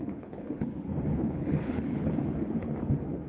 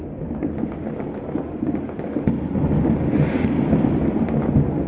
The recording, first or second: second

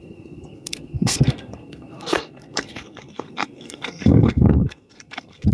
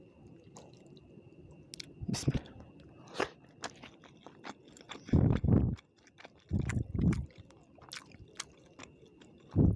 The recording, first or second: second